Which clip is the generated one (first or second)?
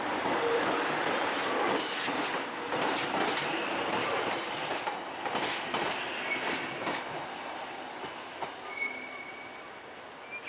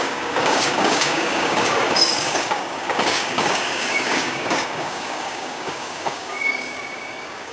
second